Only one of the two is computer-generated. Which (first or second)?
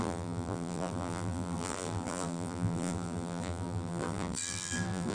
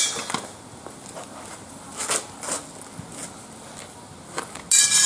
first